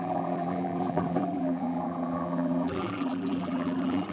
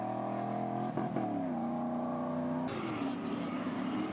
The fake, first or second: first